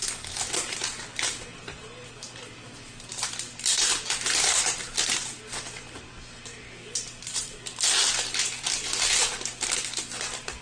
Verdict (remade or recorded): recorded